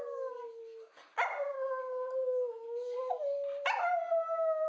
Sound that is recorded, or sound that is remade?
recorded